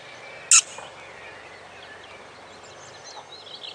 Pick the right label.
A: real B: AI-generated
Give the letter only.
A